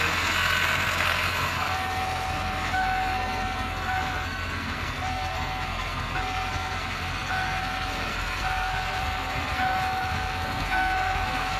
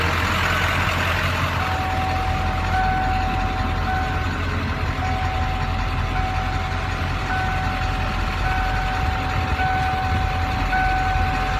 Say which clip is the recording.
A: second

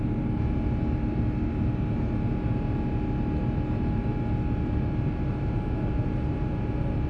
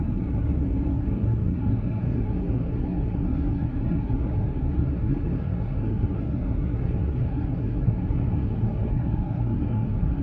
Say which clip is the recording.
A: first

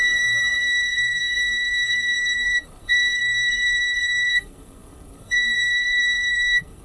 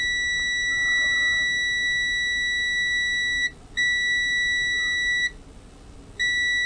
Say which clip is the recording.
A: second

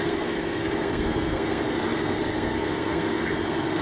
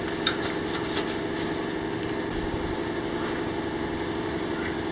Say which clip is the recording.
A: second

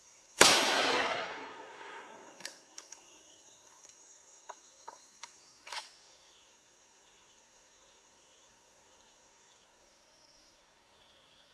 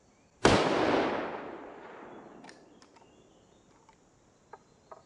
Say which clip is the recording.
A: second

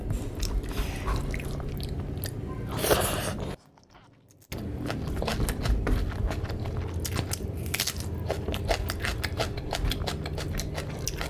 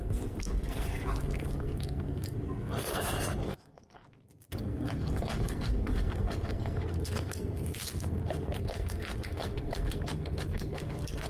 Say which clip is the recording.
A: first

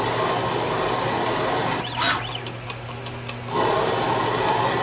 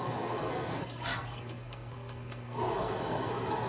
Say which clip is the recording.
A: first